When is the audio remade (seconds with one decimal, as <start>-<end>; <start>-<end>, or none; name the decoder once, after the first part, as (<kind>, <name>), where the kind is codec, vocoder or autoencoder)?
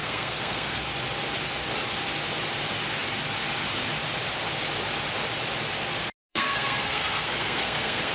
0.0-0.8 (codec, SNAC); 6.3-8.1